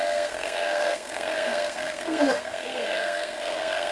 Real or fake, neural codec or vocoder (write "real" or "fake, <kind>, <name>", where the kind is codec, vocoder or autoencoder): fake, codec, SNAC